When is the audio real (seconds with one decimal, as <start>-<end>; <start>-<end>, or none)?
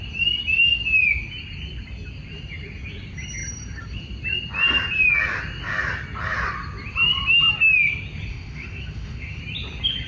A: 0.0-8.3; 9.4-10.1